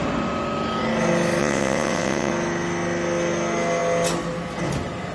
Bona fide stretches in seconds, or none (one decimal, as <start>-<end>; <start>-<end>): 0.0-1.4; 2.3-5.1